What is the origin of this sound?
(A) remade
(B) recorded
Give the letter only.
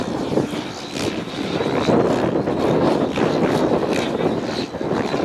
B